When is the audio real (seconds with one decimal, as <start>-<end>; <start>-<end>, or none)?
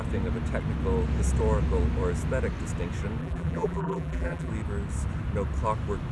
0.0-3.2; 4.5-6.1